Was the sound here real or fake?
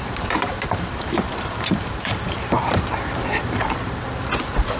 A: fake